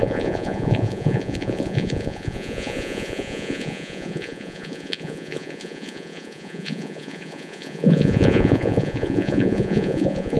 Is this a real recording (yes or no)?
no